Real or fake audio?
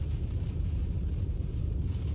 fake